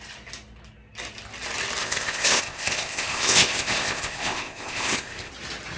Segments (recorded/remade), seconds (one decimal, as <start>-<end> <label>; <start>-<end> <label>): 0.0-1.8 recorded; 1.8-5.3 remade; 5.3-5.8 recorded